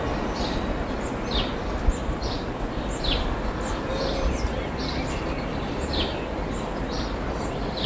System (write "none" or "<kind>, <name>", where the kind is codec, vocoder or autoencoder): none